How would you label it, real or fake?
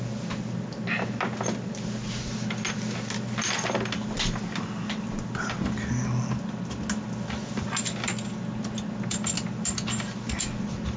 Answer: real